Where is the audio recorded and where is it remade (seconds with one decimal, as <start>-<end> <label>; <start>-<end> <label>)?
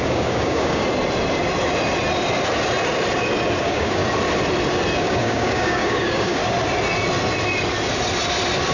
0.0-0.8 remade; 0.8-3.6 recorded; 3.6-4.0 remade; 4.0-5.0 recorded; 5.0-6.4 remade; 6.4-8.7 recorded